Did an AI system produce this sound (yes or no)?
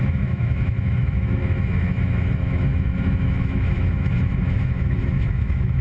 yes